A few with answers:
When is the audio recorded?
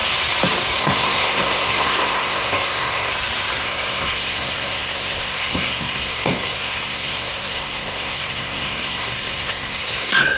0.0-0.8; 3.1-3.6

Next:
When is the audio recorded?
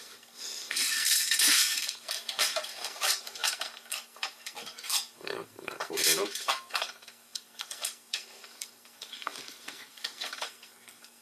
none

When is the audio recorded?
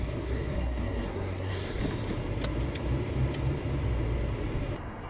1.8-5.1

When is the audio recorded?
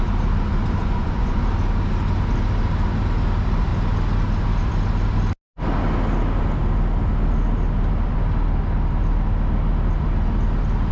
0.0-0.8; 1.4-10.9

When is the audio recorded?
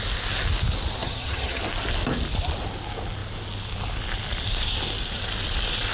0.0-1.0; 1.6-5.9